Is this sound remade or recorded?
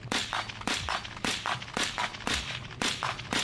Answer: recorded